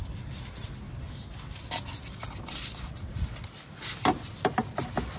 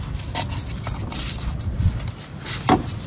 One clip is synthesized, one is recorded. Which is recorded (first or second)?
first